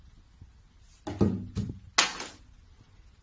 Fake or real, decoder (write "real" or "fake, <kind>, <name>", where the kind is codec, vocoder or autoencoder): real